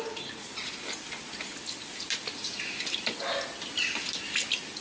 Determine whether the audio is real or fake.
real